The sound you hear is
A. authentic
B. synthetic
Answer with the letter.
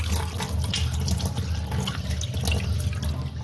A